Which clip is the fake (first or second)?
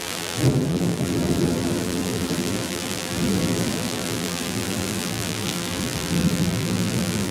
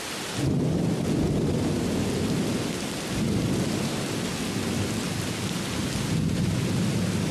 first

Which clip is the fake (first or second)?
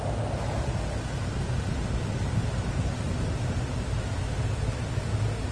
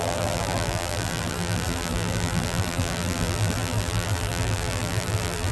second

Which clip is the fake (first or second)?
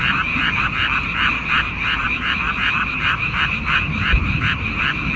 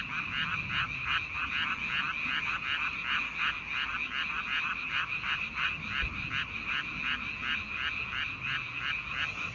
first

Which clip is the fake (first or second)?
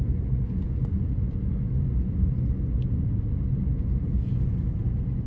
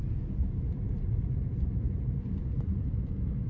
second